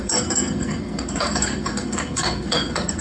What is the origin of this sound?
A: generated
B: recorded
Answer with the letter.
A